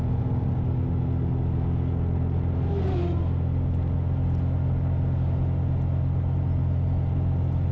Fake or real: real